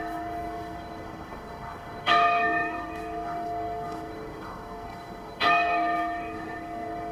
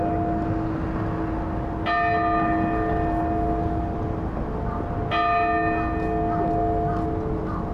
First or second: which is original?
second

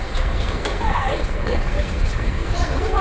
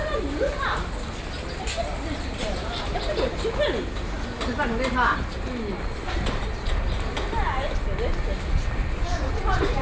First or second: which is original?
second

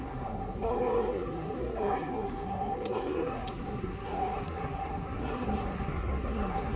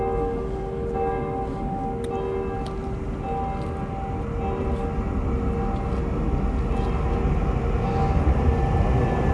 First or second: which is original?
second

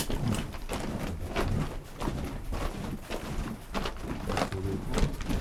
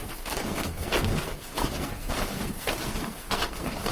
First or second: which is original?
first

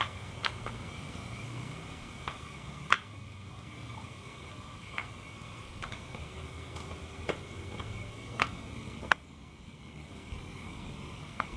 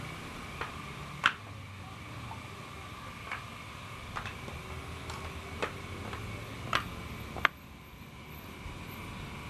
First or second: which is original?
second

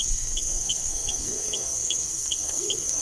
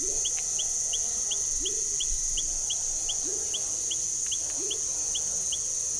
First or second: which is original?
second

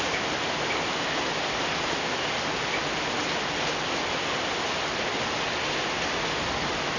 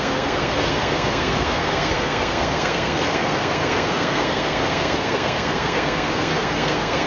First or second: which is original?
first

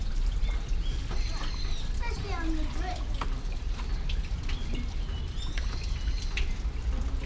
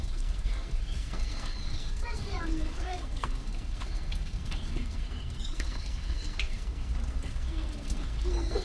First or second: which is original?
first